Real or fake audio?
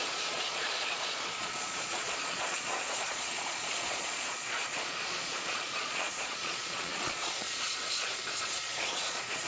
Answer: fake